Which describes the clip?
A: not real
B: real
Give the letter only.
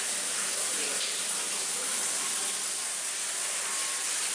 B